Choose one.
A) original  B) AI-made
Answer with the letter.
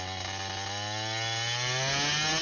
A